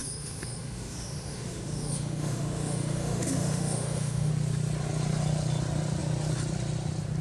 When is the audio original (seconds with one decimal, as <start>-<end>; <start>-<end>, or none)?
4.3-7.2